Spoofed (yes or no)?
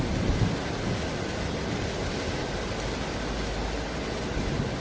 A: no